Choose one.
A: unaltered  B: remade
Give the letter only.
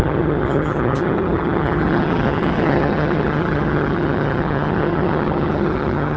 B